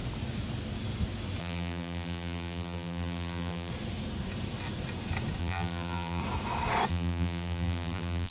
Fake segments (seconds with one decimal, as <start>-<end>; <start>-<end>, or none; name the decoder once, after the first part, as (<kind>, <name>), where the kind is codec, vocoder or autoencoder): 1.4-3.7 (vocoder, BigVGAN v2); 5.4-6.2; 6.9-8.3